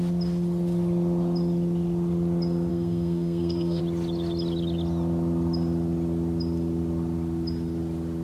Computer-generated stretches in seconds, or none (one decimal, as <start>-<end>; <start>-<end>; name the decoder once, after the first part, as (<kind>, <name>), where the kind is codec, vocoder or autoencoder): 2.7-3.8 (codec, SNAC)